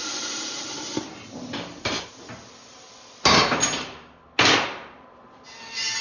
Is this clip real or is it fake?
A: real